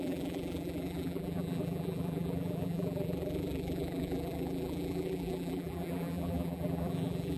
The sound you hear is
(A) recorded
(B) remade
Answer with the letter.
B